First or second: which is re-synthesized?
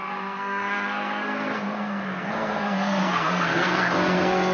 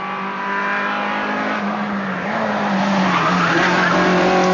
first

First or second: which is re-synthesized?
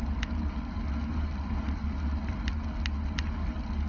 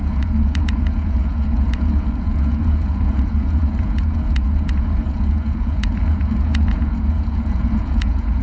second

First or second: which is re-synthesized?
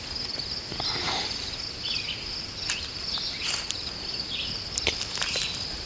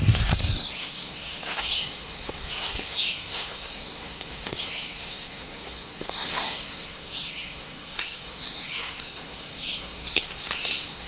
second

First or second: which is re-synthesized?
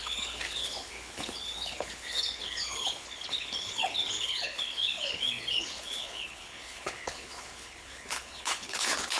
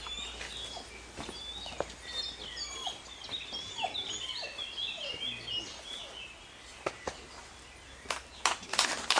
first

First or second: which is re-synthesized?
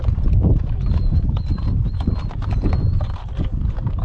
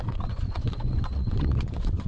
second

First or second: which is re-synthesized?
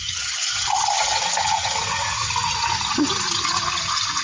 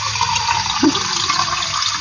first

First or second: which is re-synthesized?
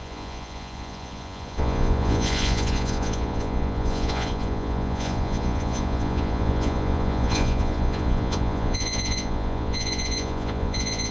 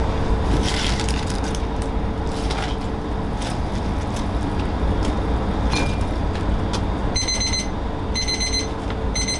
first